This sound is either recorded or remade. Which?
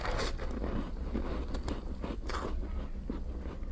recorded